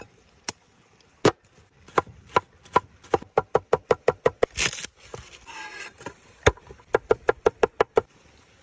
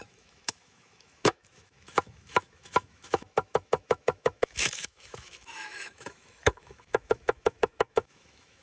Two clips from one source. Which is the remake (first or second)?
second